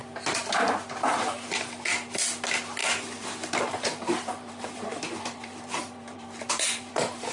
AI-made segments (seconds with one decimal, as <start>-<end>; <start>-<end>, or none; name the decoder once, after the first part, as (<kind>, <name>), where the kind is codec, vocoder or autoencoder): 2.8-7.3 (vocoder, BigVGAN v2)